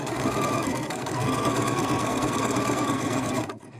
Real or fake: fake